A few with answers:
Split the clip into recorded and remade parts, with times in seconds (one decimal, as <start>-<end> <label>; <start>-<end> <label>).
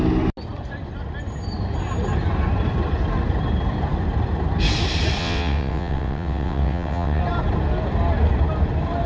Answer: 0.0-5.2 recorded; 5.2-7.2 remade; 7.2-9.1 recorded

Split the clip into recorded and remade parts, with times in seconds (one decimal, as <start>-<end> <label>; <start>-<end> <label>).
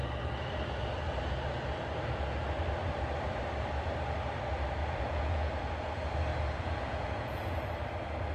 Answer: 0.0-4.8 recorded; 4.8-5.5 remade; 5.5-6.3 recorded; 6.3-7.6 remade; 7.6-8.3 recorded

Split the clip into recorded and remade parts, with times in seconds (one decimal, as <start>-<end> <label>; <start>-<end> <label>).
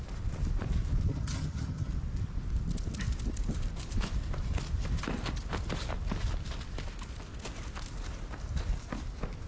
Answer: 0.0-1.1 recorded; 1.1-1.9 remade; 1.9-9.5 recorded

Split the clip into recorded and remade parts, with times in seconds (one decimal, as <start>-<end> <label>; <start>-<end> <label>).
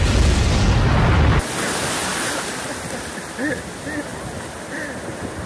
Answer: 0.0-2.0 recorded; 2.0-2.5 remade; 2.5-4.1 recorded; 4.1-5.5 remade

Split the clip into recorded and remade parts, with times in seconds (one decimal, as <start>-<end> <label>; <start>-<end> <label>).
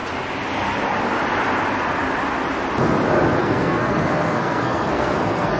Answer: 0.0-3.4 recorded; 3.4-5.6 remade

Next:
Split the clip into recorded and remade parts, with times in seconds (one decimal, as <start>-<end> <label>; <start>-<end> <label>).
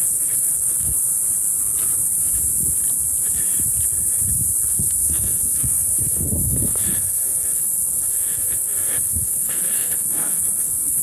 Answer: 0.0-1.1 remade; 1.1-4.7 recorded; 4.7-11.0 remade